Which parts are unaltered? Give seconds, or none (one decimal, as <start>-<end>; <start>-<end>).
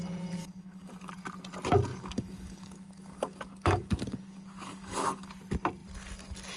0.0-0.4; 1.1-1.9; 5.3-6.6